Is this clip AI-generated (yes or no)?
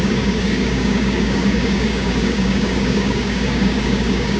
yes